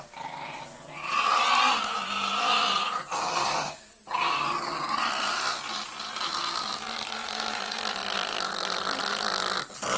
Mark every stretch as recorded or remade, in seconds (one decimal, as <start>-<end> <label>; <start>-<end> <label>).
0.0-8.0 recorded; 8.0-9.0 remade; 9.0-10.0 recorded